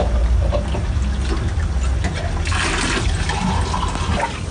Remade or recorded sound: recorded